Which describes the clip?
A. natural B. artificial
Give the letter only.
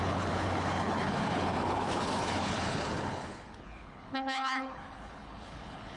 B